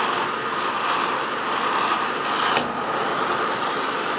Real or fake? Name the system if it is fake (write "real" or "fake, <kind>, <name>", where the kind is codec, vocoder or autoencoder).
real